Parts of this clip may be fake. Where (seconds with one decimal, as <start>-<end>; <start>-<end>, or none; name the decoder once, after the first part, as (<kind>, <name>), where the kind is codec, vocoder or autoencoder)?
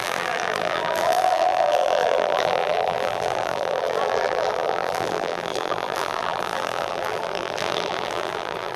0.0-8.8 (vocoder, BigVGAN v2)